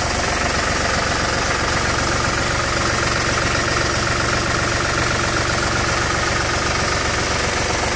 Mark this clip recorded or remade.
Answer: recorded